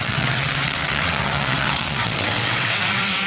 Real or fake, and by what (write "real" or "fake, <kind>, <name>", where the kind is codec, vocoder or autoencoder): fake, vocoder, WaveNeXt